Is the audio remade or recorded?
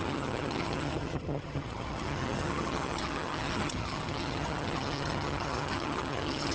remade